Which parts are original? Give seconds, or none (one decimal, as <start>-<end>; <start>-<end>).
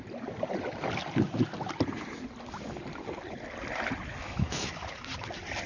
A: 0.0-4.2; 4.7-5.7